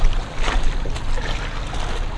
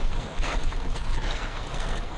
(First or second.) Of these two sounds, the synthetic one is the second